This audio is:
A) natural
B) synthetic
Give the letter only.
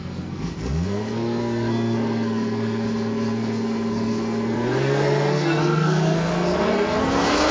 B